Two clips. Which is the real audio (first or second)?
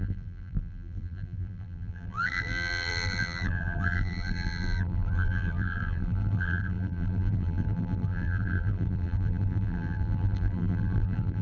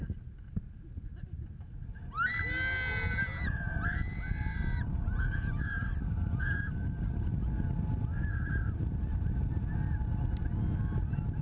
second